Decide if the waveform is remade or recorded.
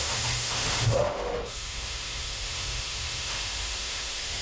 remade